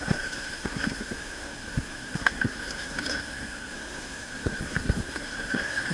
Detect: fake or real fake